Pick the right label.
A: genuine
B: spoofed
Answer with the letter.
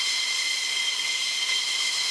A